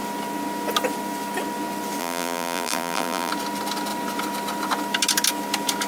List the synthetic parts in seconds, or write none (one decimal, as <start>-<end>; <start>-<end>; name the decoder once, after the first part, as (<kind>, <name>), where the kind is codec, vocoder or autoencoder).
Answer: 2.0-3.3 (vocoder, BigVGAN v2)